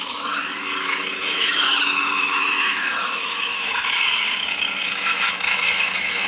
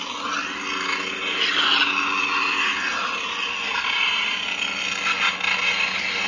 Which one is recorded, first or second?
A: second